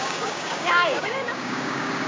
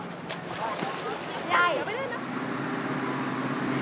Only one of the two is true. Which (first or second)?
second